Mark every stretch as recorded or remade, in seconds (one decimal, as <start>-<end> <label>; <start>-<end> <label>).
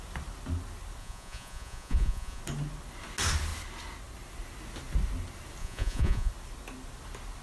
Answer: 0.0-1.0 recorded; 1.0-2.4 remade; 2.4-5.6 recorded; 5.6-6.3 remade; 6.3-7.4 recorded